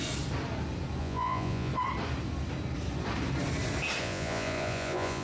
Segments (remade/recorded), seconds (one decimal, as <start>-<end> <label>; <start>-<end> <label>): 0.0-1.0 recorded; 1.0-1.7 remade; 1.7-4.0 recorded; 4.0-5.2 remade